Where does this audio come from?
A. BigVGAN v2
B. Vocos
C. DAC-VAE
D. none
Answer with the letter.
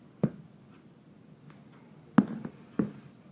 D